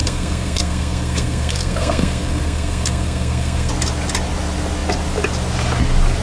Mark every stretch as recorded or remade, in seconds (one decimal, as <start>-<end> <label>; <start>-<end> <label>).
0.0-3.7 remade; 3.7-6.2 recorded